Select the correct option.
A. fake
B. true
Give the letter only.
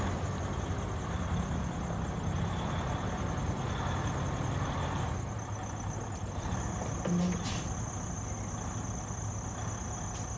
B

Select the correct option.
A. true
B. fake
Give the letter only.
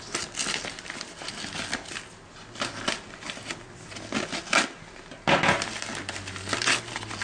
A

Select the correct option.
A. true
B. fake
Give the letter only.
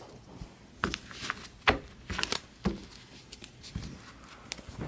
A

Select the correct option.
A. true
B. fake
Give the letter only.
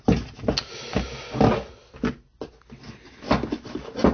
A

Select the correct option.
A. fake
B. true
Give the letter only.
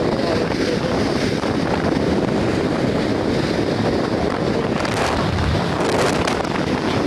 B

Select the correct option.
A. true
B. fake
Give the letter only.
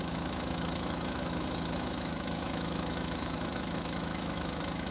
B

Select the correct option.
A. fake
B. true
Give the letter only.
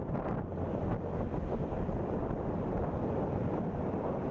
B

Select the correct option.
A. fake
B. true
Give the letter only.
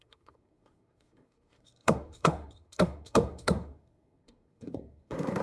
A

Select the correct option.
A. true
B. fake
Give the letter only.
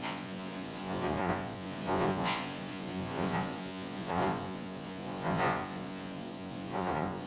B